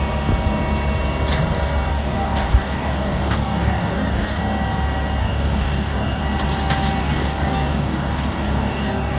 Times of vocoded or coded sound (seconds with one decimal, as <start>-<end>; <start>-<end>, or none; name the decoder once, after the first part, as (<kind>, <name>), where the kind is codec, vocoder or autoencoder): 1.9-4.4 (codec, DAC); 5.2-6.2; 7.0-9.2